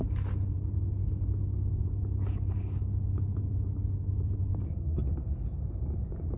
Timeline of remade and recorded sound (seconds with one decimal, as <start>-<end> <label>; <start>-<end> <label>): 0.0-6.4 recorded